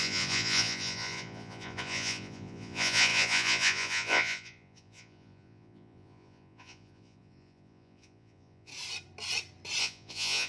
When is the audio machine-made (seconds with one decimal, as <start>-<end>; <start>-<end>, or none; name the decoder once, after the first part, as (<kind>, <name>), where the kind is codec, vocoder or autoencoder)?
0.0-8.7 (vocoder, Vocos); 9.8-10.5